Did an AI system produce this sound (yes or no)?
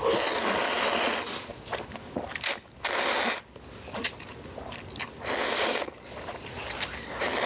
no